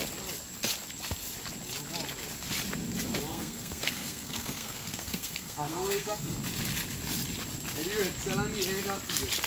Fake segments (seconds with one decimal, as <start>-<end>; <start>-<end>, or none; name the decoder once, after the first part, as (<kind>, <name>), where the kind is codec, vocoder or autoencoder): 3.3-6.3 (codec, SNAC)